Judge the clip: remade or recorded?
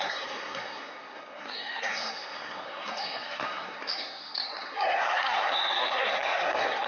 remade